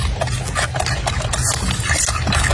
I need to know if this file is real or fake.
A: real